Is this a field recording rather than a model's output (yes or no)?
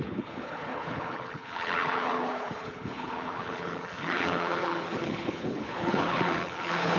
no